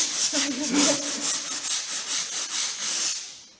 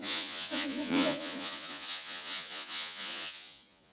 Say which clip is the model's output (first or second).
second